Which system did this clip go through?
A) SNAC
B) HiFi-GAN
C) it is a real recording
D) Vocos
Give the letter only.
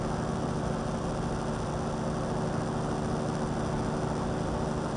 C